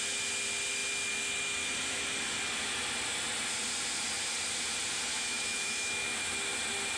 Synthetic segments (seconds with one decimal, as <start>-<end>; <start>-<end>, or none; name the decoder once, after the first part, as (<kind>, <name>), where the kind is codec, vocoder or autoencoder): 5.1-6.3 (autoencoder, DAC-VAE)